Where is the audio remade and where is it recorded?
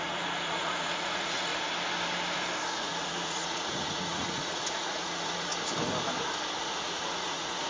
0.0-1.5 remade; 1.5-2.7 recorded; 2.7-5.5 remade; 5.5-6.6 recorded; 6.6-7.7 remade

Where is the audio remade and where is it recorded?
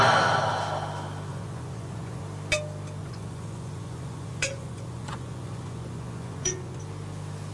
0.0-1.3 recorded; 1.3-2.2 remade; 2.2-3.0 recorded; 3.0-6.8 remade; 6.8-7.5 recorded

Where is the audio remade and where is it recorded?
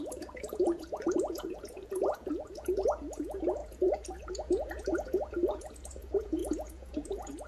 0.0-7.5 remade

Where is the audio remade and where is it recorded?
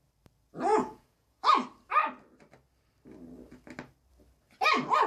0.0-0.7 recorded; 0.7-1.5 remade; 1.5-5.1 recorded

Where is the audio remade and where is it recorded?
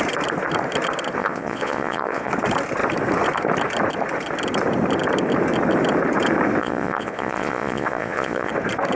0.0-1.2 recorded; 1.2-2.3 remade; 2.3-6.6 recorded; 6.6-8.5 remade; 8.5-9.0 recorded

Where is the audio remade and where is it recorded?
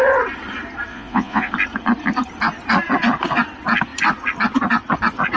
0.0-0.9 recorded; 0.9-1.5 remade; 1.5-5.4 recorded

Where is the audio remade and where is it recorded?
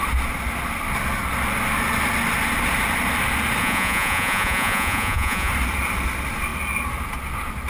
0.0-3.6 recorded; 3.6-5.5 remade; 5.5-7.7 recorded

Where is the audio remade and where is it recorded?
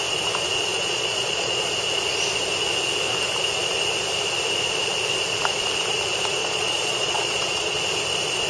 0.0-0.7 recorded; 0.7-1.6 remade; 1.6-6.4 recorded; 6.4-7.8 remade; 7.8-8.5 recorded